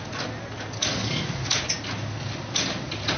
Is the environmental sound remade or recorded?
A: recorded